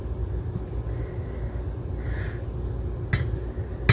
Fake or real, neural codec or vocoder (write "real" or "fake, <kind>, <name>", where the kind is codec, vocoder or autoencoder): real